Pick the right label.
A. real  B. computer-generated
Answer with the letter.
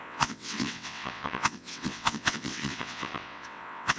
B